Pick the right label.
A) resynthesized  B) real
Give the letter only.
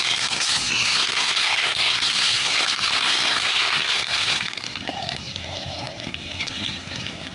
A